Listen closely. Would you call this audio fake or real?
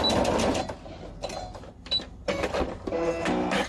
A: real